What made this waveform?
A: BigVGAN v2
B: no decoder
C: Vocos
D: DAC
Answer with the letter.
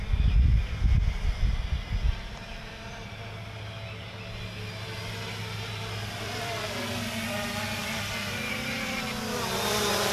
B